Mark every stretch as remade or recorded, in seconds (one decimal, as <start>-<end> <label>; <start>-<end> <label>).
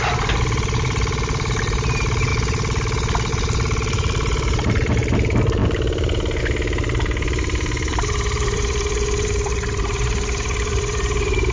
0.0-2.3 remade; 2.3-3.3 recorded; 3.3-11.5 remade